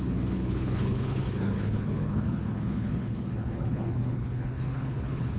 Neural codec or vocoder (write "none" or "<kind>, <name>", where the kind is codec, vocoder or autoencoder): codec, HILCodec